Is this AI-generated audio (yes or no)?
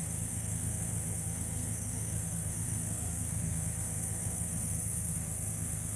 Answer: yes